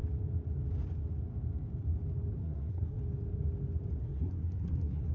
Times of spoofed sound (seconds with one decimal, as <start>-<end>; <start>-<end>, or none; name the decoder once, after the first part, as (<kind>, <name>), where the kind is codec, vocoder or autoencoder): 2.4-3.0 (codec, SNAC); 4.0-5.1